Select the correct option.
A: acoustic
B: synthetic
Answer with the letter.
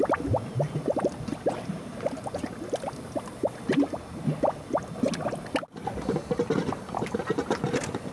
A